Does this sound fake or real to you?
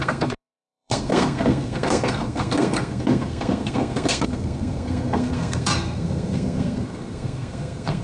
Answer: fake